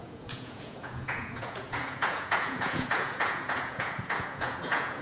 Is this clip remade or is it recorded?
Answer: remade